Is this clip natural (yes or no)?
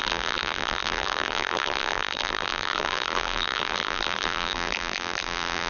no